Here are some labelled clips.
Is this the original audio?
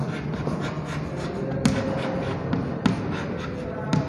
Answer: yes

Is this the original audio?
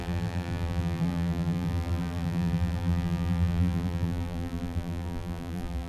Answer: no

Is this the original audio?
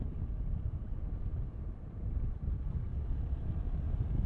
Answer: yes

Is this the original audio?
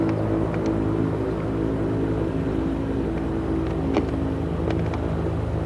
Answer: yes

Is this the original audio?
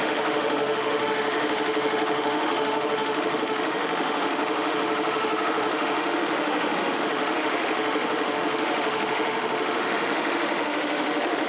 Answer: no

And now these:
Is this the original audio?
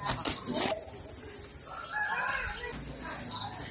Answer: yes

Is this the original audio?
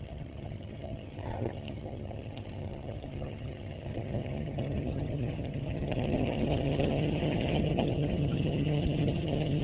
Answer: no